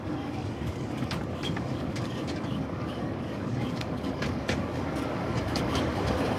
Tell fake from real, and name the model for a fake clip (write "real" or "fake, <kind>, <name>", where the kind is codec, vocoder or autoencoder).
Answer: fake, codec, DAC